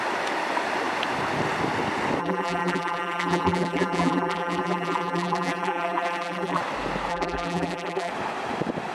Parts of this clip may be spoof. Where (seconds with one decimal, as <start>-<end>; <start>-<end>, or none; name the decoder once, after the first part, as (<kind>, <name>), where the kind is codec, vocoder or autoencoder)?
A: 2.2-6.6 (vocoder, BigVGAN v2); 7.1-8.1